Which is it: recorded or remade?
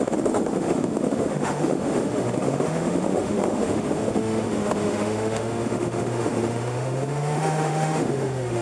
remade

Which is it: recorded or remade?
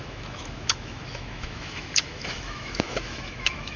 remade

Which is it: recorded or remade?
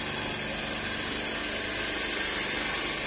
recorded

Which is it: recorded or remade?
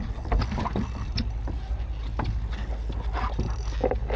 recorded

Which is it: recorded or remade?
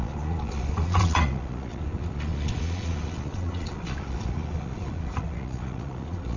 remade